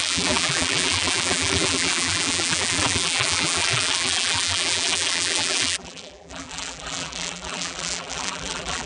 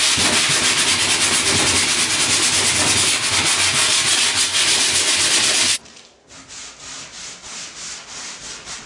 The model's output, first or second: first